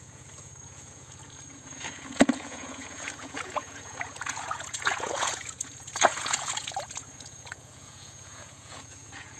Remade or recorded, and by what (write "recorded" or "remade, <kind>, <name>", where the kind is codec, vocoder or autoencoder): remade, vocoder, Vocos